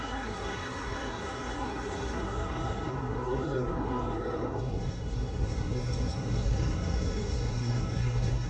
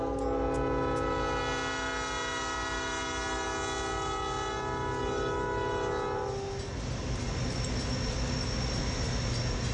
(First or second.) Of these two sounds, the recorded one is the second